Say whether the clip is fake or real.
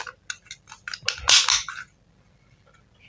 real